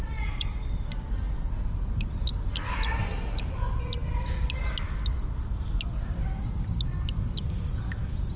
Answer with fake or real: real